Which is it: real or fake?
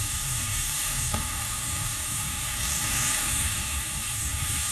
fake